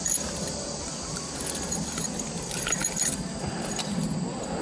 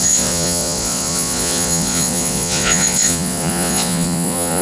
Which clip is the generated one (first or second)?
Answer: second